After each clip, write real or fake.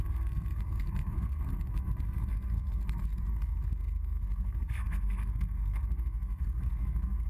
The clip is fake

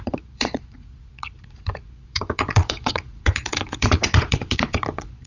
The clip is fake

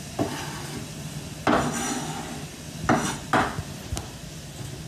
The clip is real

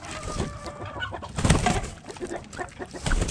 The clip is real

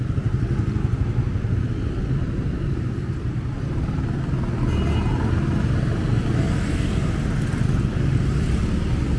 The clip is real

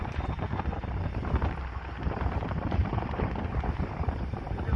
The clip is fake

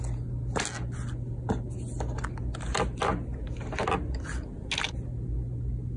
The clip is real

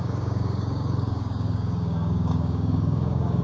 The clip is fake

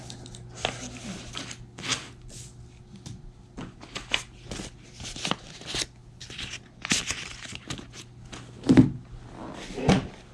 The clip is real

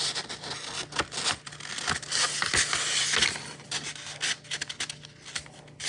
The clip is real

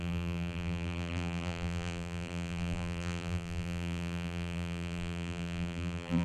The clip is fake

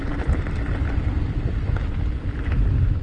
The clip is real